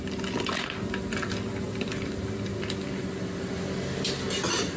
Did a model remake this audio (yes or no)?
no